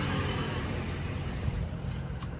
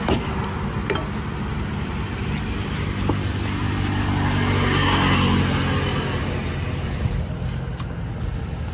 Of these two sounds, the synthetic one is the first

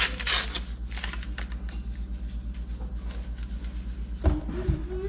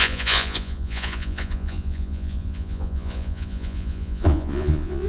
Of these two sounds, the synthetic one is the second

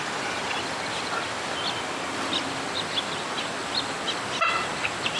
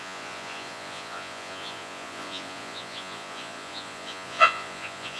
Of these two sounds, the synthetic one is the second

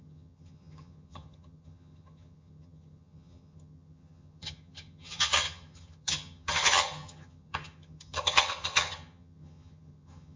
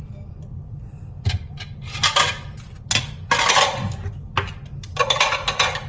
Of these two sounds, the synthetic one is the first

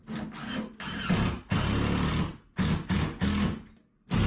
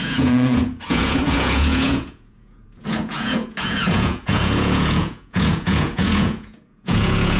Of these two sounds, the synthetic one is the second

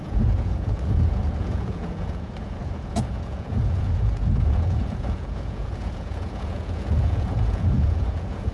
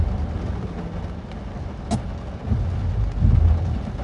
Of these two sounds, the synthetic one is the first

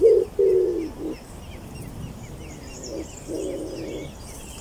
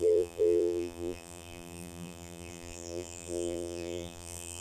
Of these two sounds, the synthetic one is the second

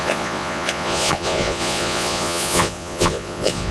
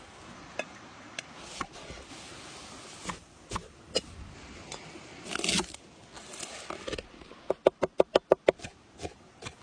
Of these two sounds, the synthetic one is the first